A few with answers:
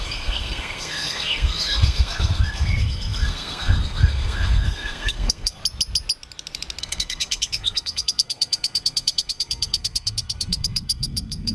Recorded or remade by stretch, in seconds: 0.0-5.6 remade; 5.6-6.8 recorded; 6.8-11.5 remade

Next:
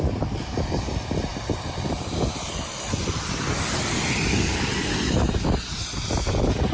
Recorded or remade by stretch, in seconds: 0.0-6.7 recorded

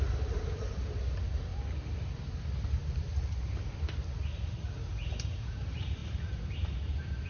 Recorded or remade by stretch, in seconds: 0.0-1.5 remade; 1.5-2.4 recorded; 2.4-2.8 remade; 2.8-3.6 recorded; 3.6-7.3 remade

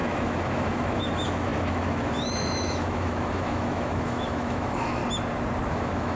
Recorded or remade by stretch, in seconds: 0.0-5.0 remade; 5.0-5.7 recorded; 5.7-6.2 remade